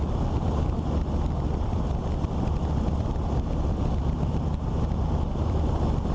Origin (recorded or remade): recorded